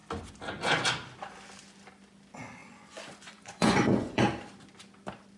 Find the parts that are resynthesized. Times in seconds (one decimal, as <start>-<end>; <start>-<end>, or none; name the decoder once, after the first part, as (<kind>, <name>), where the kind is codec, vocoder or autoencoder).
2.6-4.2 (vocoder, Vocos)